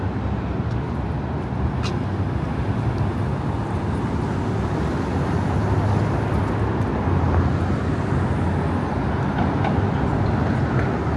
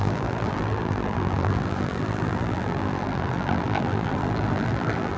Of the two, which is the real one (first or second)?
first